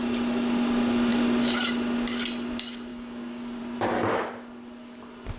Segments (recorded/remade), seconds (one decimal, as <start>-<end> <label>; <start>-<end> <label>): 0.0-2.9 recorded; 2.9-3.6 remade; 3.6-5.4 recorded